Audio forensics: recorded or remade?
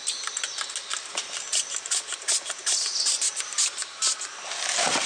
recorded